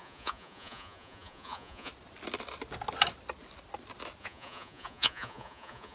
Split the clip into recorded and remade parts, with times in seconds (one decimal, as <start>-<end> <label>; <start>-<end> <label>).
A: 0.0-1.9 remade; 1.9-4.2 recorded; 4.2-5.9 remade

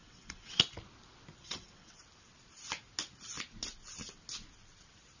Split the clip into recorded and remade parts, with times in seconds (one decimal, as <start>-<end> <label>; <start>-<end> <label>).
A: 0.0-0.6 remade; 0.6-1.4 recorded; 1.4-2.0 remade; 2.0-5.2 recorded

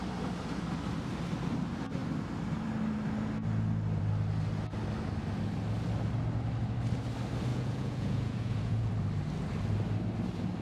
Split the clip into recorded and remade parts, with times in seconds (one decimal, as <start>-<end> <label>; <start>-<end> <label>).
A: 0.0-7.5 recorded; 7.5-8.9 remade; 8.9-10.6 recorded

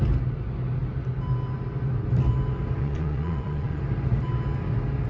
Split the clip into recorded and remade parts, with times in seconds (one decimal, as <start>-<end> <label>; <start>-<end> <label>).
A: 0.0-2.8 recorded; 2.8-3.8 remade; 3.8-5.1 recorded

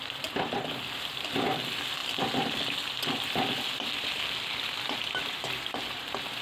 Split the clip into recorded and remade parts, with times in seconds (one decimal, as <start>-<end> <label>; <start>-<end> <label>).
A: 0.0-6.4 recorded

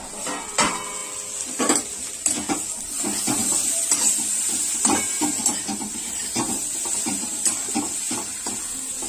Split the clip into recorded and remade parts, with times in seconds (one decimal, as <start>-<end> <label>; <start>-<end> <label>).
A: 0.0-3.4 recorded; 3.4-7.8 remade; 7.8-9.1 recorded

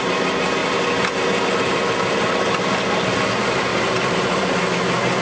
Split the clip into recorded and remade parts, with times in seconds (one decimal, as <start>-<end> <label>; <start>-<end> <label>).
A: 0.0-3.7 recorded; 3.7-4.5 remade; 4.5-5.2 recorded